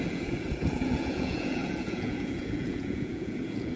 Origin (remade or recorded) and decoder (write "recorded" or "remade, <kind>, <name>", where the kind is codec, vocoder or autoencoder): remade, vocoder, Vocos